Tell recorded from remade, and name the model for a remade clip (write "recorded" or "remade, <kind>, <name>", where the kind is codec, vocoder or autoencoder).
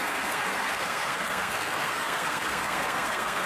remade, codec, SNAC